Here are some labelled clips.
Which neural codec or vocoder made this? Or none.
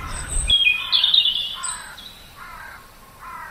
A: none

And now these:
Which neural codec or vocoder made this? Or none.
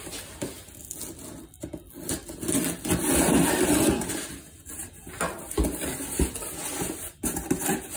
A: none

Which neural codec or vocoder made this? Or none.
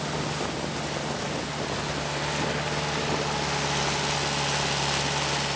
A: none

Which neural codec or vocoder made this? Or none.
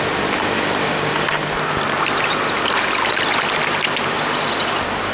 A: none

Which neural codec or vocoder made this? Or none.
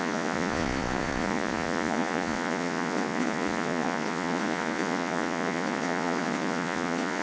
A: vocoder, Vocos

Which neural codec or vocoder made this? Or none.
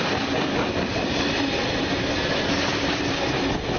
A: none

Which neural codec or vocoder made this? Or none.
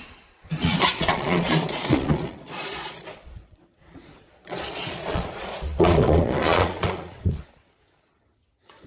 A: vocoder, Vocos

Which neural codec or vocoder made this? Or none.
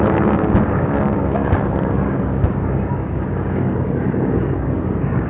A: codec, DAC